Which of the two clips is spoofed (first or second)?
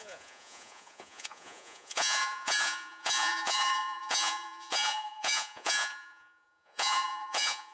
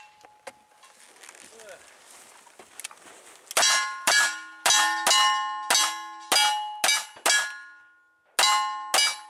first